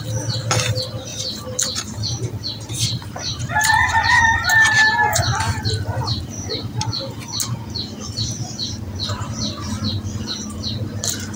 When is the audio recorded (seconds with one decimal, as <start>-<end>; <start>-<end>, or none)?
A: 0.0-1.1; 6.2-11.4

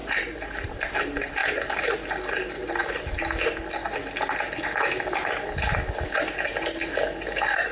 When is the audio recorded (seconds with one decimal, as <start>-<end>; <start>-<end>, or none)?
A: 0.7-1.4; 2.0-7.7

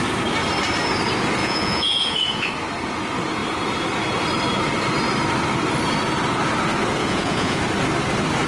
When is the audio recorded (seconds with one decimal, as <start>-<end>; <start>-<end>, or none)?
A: 0.0-1.4; 2.5-7.0; 7.6-8.5

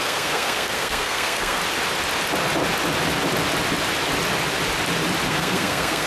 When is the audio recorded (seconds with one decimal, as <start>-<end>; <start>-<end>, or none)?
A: 1.6-5.3

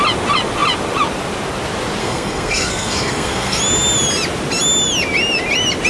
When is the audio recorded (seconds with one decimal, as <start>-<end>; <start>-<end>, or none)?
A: 0.0-2.0; 3.6-5.9

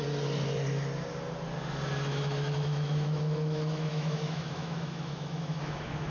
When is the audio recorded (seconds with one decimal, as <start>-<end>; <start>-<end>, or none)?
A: 0.0-2.1

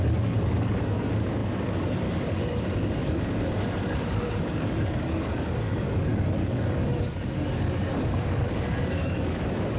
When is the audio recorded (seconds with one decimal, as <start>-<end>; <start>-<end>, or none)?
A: none

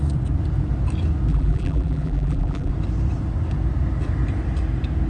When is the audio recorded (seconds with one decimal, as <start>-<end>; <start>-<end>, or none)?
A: 0.0-1.3; 2.7-5.1